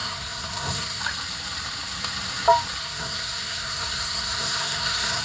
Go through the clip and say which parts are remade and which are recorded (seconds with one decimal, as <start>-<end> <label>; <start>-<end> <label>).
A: 0.0-1.0 remade; 1.0-2.8 recorded; 2.8-5.2 remade